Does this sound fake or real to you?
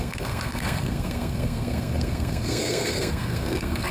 fake